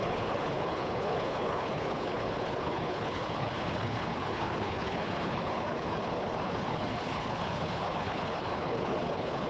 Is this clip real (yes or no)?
no